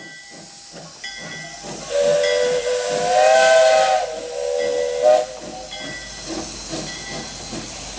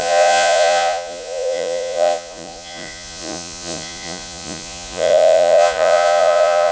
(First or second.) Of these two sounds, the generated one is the second